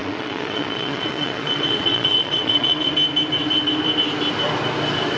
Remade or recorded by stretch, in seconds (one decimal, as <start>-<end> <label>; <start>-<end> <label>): 0.0-2.9 remade; 2.9-5.2 recorded